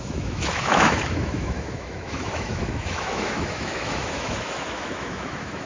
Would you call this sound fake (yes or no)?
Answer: yes